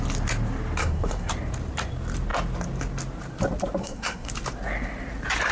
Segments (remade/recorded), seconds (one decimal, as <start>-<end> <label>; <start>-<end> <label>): 0.0-0.8 recorded; 0.8-1.3 remade; 1.3-3.8 recorded; 3.8-4.3 remade; 4.3-5.5 recorded